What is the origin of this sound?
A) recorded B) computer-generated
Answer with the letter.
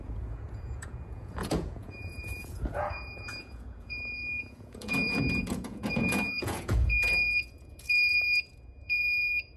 B